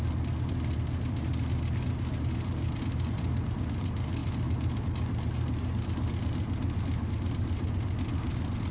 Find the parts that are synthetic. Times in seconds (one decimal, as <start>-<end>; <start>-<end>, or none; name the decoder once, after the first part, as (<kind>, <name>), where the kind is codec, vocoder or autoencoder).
none